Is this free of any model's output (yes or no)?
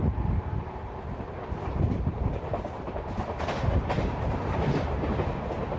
no